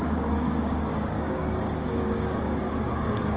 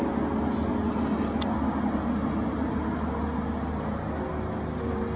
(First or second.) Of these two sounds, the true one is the second